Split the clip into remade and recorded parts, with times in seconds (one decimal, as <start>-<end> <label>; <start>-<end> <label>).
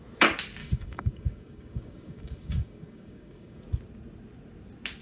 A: 0.0-0.6 recorded; 0.6-3.6 remade; 3.6-5.0 recorded